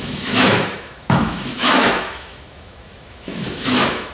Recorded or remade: remade